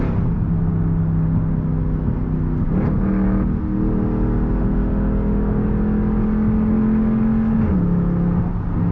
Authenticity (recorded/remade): recorded